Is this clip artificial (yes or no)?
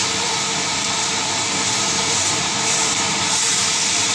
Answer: yes